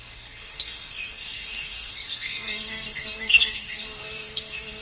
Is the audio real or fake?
fake